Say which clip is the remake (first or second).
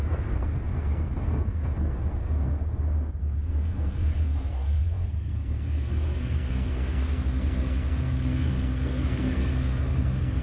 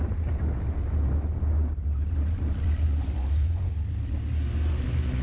first